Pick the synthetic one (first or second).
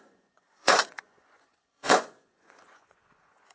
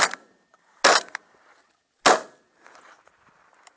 first